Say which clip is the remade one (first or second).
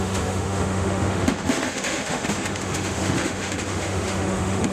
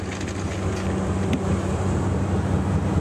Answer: first